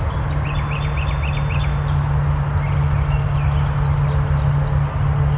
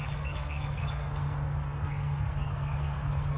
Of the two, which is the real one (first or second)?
first